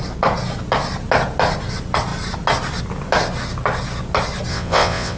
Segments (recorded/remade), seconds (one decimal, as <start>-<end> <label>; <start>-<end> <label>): 0.0-4.5 recorded; 4.5-5.2 remade